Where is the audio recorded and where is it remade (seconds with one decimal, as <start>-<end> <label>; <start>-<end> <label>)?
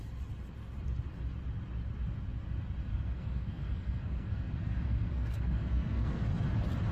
0.0-2.9 recorded; 2.9-6.3 remade; 6.3-6.9 recorded